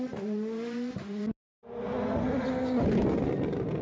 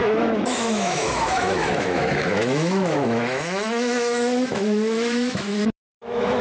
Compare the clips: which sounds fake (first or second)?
second